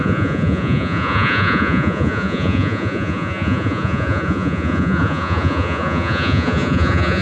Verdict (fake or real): fake